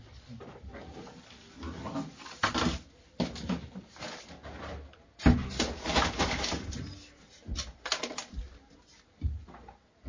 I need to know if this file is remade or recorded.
recorded